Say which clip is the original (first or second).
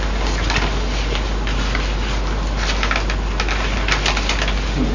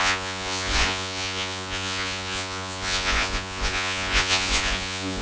first